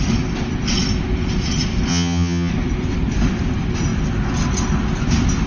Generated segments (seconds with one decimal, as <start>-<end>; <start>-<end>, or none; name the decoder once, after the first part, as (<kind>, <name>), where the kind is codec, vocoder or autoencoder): 1.9-2.5 (vocoder, HiFi-GAN)